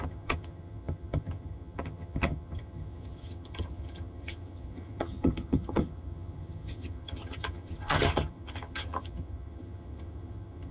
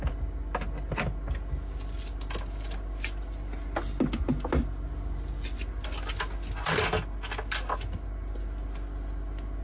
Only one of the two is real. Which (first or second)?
second